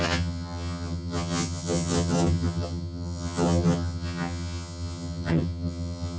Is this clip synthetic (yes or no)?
yes